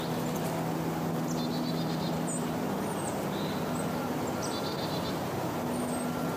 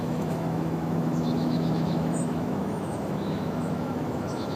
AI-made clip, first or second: second